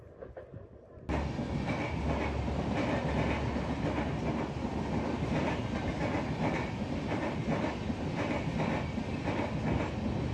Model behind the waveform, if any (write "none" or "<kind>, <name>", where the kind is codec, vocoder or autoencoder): none